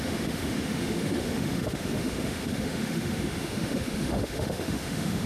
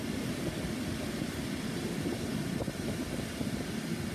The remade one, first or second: first